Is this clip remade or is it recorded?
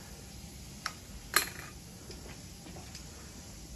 recorded